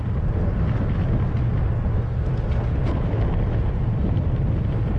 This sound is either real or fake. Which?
real